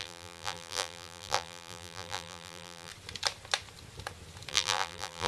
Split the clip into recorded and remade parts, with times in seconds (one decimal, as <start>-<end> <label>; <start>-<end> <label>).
0.0-2.9 remade; 2.9-4.5 recorded; 4.5-5.3 remade